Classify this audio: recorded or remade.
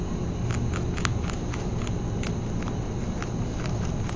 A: recorded